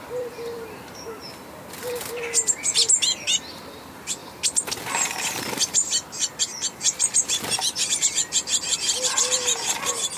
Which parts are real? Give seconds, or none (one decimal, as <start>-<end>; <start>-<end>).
4.2-4.9